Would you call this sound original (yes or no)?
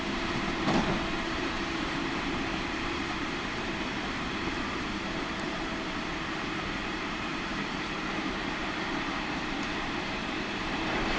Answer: no